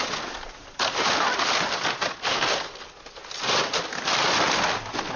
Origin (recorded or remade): recorded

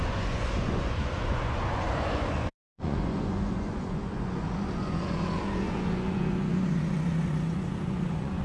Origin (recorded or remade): remade